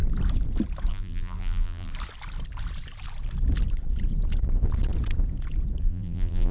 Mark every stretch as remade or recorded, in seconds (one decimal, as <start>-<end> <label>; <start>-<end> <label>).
0.0-0.9 recorded; 0.9-1.9 remade; 1.9-5.8 recorded; 5.8-6.5 remade